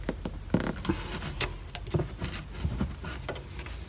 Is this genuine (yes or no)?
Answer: yes